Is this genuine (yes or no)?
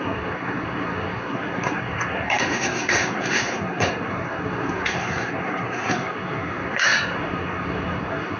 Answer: no